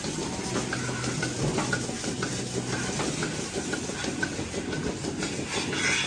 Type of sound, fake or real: real